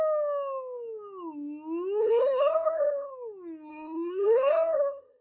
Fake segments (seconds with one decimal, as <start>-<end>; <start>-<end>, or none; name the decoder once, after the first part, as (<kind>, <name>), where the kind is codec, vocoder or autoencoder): 2.0-3.1 (codec, SNAC); 3.7-5.2